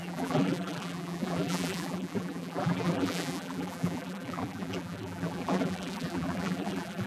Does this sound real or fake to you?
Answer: fake